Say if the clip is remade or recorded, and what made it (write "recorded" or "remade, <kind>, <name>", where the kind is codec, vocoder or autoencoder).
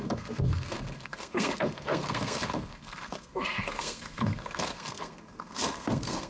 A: remade, codec, SNAC